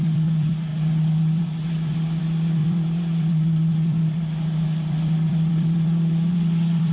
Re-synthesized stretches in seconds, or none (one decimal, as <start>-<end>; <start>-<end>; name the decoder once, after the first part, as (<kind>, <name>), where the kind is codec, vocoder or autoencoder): 0.0-6.9 (vocoder, BigVGAN v2)